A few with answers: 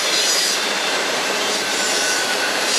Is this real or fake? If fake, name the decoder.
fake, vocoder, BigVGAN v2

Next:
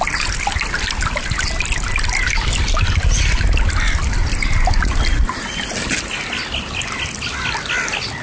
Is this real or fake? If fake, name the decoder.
real